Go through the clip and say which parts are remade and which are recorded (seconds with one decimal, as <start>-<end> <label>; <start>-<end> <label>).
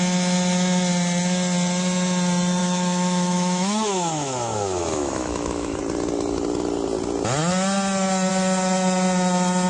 0.0-2.6 recorded; 2.6-5.8 remade; 5.8-9.7 recorded